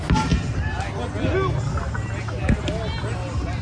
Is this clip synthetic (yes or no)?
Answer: no